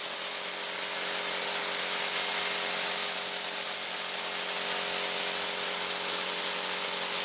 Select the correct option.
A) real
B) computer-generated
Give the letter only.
A